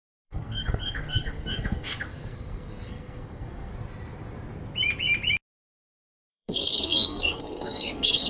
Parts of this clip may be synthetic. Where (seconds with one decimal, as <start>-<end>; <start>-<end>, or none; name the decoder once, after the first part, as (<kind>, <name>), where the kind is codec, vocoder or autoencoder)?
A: 0.0-3.7 (codec, SNAC); 6.3-8.3